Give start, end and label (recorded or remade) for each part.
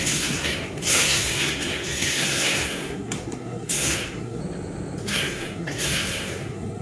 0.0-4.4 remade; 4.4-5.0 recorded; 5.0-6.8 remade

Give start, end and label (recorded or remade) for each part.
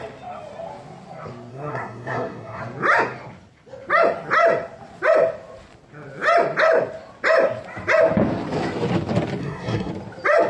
0.0-1.5 recorded; 1.5-2.6 remade; 2.6-9.4 recorded; 9.4-9.9 remade; 9.9-10.5 recorded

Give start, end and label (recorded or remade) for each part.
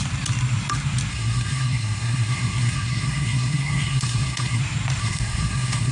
0.0-1.1 recorded; 1.1-4.6 remade; 4.6-5.0 recorded; 5.0-5.9 remade